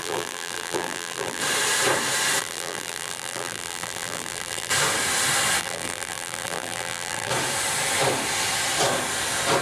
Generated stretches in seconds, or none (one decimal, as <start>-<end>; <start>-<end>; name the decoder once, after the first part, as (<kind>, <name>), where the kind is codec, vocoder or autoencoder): 0.0-1.4 (vocoder, BigVGAN v2); 2.4-4.7; 5.6-7.3